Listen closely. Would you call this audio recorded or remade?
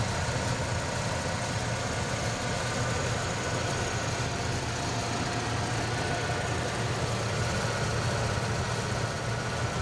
recorded